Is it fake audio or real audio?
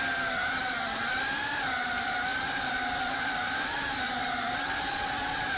fake